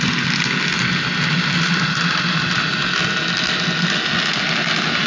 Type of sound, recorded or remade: recorded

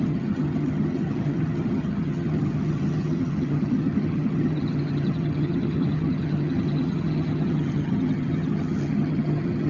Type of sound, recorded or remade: remade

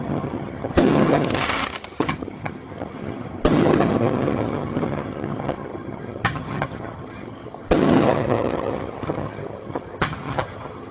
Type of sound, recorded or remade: remade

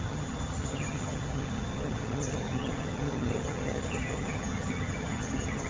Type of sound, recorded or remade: remade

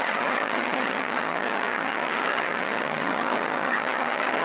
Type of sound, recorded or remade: remade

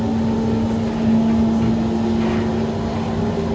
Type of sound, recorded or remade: recorded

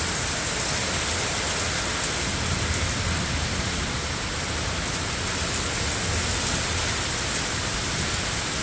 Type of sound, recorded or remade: recorded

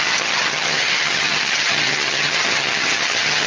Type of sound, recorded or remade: remade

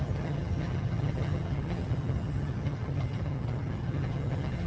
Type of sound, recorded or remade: remade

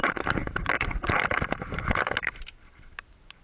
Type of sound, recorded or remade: recorded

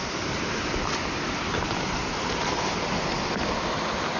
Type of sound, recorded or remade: recorded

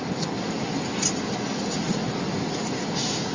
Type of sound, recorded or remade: recorded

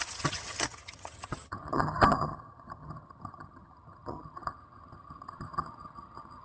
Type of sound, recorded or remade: remade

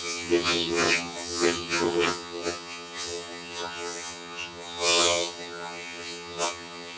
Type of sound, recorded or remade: remade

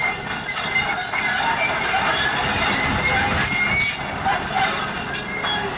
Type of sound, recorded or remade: recorded